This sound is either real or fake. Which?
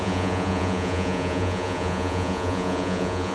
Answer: fake